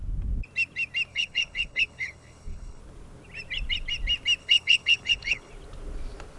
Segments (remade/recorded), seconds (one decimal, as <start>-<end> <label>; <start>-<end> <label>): 0.0-1.1 recorded; 1.1-2.8 remade; 2.8-4.4 recorded; 4.4-5.5 remade; 5.5-6.4 recorded

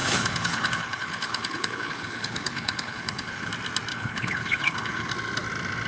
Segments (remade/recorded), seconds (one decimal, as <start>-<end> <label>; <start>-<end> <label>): 0.0-3.5 remade; 3.5-3.9 recorded; 3.9-5.1 remade; 5.1-5.9 recorded

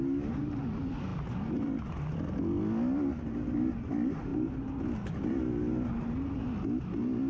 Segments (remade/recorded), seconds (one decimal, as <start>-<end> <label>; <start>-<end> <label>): 0.0-7.3 recorded

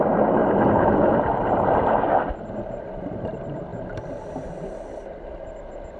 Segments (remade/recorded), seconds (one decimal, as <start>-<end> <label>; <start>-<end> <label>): 0.0-6.0 recorded

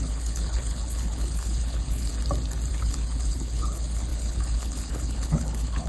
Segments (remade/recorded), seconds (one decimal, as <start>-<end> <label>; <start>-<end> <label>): 0.0-2.1 remade; 2.1-2.7 recorded; 2.7-5.9 remade

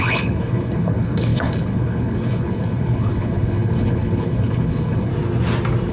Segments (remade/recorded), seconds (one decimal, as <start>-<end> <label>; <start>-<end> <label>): 0.0-5.1 remade; 5.1-5.9 recorded

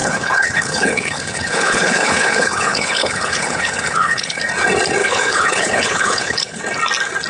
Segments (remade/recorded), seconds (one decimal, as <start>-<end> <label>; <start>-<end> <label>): 0.0-4.4 remade; 4.4-5.0 recorded; 5.0-6.6 remade; 6.6-7.3 recorded